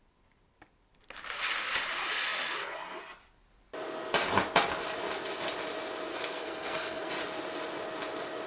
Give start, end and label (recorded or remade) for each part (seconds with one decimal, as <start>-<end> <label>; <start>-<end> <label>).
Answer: 0.0-6.1 recorded; 6.1-7.1 remade; 7.1-8.5 recorded